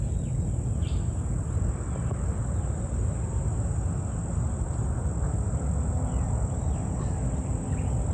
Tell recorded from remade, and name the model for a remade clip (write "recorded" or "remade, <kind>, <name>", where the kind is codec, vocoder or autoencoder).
recorded